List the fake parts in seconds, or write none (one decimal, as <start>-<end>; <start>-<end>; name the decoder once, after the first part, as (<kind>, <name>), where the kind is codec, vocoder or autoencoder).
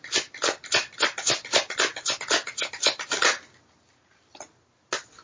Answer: none